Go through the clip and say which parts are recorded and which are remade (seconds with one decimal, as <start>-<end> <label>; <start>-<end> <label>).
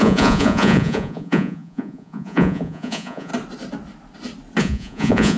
0.0-3.3 remade; 3.3-4.6 recorded; 4.6-5.4 remade